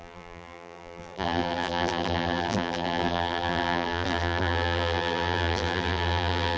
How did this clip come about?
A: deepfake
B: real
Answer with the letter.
A